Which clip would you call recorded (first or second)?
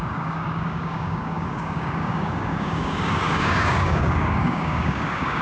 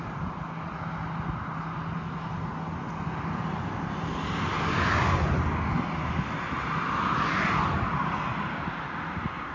second